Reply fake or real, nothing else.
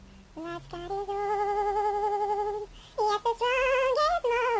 real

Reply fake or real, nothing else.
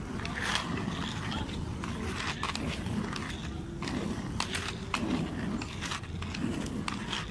real